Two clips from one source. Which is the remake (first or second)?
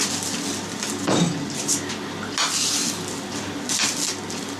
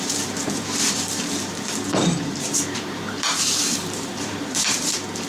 second